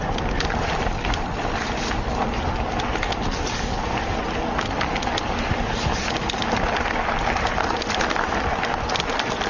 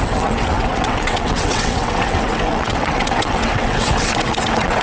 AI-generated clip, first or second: second